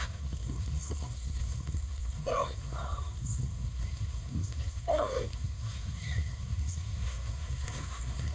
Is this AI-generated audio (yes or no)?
yes